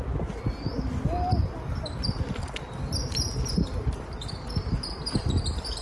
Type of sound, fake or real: real